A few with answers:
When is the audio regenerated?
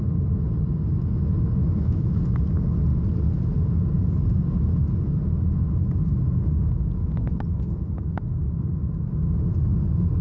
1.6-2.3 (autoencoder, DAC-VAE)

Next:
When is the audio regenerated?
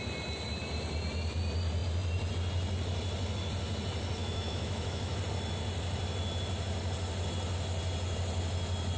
4.2-5.2 (autoencoder, DAC-VAE)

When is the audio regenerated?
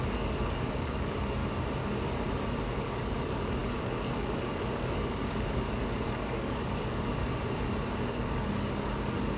0.0-1.4 (codec, DAC); 2.8-7.2; 8.0-9.4